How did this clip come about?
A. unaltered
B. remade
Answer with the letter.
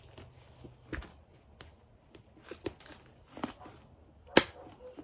A